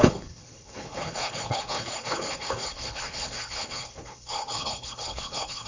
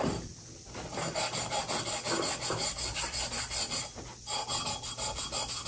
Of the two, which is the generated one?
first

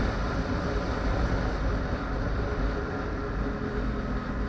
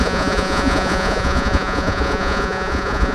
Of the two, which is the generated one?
second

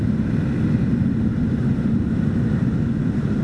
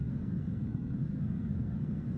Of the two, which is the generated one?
second